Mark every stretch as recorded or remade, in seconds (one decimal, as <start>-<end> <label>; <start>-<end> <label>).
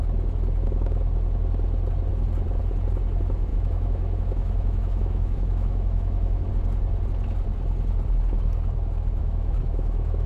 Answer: 0.0-3.5 recorded; 3.5-6.5 remade; 6.5-9.2 recorded; 9.2-10.3 remade